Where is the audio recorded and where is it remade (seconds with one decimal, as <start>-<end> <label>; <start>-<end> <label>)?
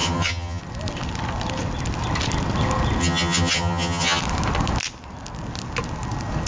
0.0-0.6 remade; 0.6-3.0 recorded; 3.0-4.2 remade; 4.2-6.5 recorded